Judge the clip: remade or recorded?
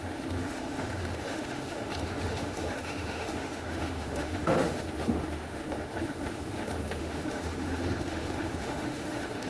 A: remade